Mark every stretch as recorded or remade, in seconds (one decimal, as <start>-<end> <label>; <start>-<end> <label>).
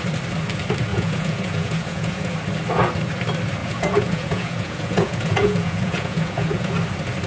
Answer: 0.0-0.9 recorded; 0.9-2.3 remade; 2.3-3.6 recorded; 3.6-6.7 remade; 6.7-7.3 recorded